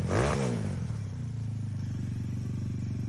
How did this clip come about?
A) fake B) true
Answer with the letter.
B